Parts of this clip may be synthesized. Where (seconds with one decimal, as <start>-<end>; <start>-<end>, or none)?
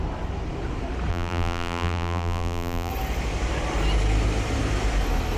1.1-2.9